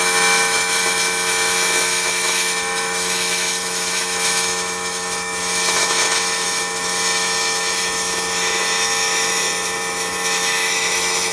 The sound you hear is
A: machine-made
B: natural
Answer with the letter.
A